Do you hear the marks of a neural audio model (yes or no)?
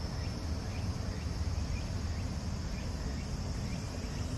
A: no